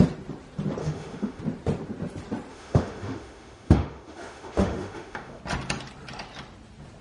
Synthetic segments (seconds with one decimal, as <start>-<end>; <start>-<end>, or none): 0.8-1.4; 2.5-5.4